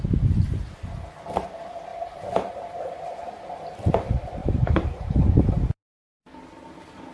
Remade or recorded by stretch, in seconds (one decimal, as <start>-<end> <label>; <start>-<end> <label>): 0.0-1.9 recorded; 1.9-2.9 remade; 2.9-4.4 recorded; 4.4-5.8 remade; 5.8-7.1 recorded